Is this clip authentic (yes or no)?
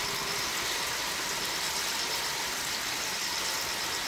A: yes